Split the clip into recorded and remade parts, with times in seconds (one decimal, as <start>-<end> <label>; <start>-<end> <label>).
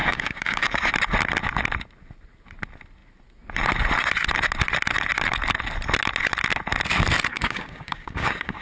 0.0-0.9 remade; 0.9-7.3 recorded; 7.3-8.6 remade